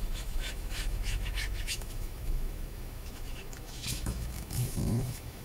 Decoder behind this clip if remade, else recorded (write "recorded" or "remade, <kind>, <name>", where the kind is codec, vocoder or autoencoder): remade, autoencoder, DAC-VAE